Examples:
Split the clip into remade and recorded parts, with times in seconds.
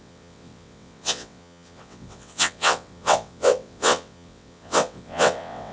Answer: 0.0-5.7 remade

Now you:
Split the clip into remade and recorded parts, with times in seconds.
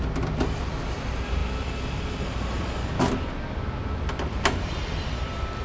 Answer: 0.0-5.6 recorded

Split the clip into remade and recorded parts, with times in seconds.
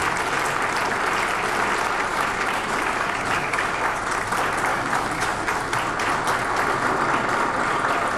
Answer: 0.0-2.1 recorded; 2.1-4.0 remade; 4.0-4.7 recorded; 4.7-5.5 remade; 5.5-8.2 recorded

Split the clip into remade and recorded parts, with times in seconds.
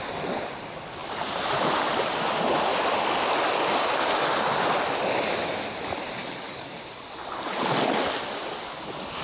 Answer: 0.0-6.2 recorded; 6.2-6.8 remade; 6.8-9.2 recorded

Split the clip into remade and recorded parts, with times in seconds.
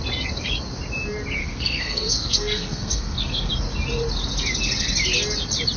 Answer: 0.0-1.4 recorded; 1.4-3.5 remade; 3.5-5.8 recorded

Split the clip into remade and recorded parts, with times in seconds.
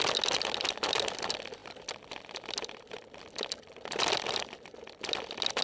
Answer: 0.0-5.6 recorded